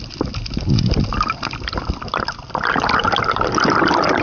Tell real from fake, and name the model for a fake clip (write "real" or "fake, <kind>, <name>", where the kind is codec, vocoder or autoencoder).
fake, vocoder, BigVGAN v2